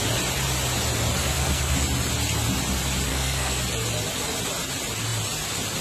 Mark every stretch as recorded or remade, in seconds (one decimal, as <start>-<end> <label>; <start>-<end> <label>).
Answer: 0.0-1.2 recorded; 1.2-1.7 remade; 1.7-3.1 recorded; 3.1-3.6 remade; 3.6-5.8 recorded